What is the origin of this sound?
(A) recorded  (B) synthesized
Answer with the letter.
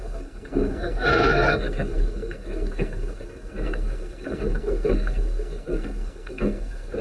B